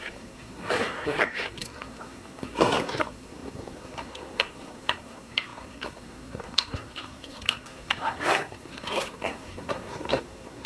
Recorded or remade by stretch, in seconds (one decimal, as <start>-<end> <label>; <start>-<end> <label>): 0.0-10.7 remade